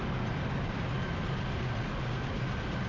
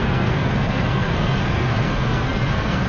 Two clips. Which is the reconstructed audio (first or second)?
second